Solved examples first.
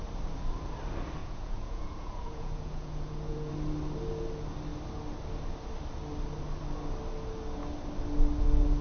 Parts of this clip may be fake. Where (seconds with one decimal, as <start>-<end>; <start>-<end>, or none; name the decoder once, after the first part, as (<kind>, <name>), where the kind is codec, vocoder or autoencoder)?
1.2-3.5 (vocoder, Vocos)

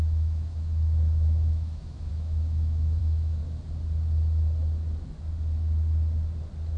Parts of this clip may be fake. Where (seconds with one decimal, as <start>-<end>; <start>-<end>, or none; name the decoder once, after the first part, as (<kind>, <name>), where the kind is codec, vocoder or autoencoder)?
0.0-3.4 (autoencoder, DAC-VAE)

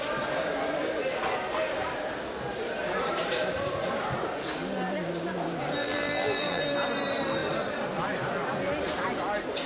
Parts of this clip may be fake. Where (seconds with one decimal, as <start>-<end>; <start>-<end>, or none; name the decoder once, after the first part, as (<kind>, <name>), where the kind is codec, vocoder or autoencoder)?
5.8-6.6 (vocoder, BigVGAN v2)

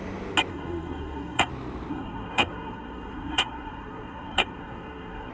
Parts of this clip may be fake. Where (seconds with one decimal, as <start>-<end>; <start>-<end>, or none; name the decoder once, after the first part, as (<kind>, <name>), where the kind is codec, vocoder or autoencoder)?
0.5-1.5 (codec, SNAC); 1.9-5.3

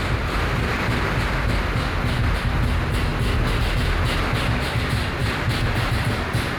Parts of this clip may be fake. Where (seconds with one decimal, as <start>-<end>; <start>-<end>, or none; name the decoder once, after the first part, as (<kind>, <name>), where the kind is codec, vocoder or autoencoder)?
5.2-6.1 (vocoder, BigVGAN v2)